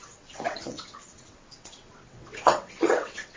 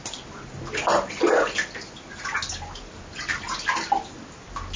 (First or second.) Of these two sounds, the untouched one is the second